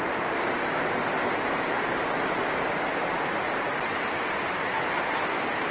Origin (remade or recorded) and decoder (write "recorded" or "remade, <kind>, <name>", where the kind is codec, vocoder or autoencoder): recorded